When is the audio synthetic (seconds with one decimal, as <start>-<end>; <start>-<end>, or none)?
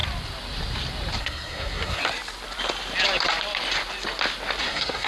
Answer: 1.2-2.0; 4.6-5.1